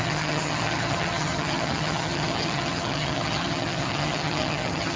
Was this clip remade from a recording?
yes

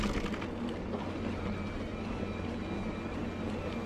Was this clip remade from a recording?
no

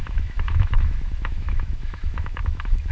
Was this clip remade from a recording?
yes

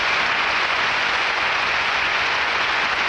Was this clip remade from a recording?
yes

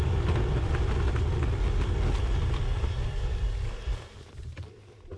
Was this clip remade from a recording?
no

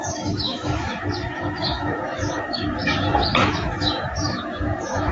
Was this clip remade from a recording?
yes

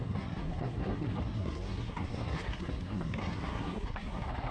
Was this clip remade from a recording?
yes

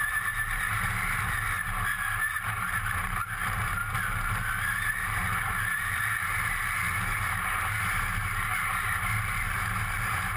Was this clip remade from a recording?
no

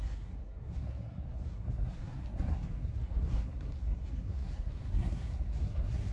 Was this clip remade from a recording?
yes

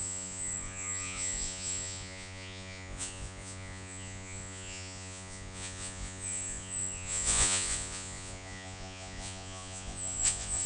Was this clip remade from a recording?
yes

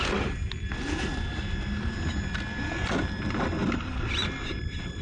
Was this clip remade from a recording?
no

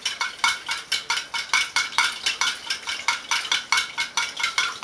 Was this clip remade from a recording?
no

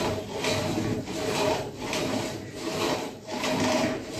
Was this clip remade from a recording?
yes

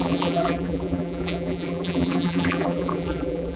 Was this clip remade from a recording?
yes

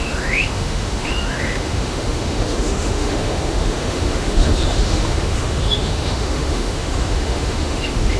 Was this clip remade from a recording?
yes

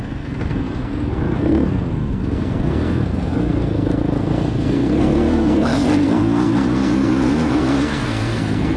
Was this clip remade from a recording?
yes